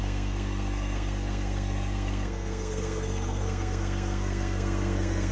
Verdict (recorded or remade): remade